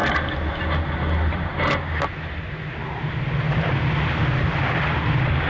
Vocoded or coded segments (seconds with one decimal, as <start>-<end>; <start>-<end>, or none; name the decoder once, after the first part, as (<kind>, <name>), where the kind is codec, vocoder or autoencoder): none